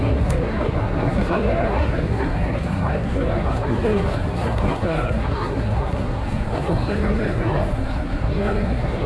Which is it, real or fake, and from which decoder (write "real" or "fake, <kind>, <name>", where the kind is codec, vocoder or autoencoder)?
fake, codec, SNAC